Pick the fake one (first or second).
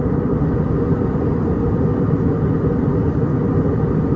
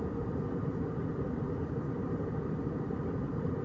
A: second